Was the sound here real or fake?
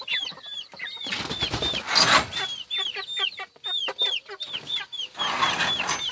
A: real